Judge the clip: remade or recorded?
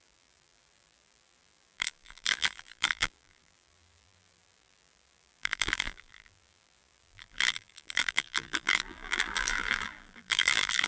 remade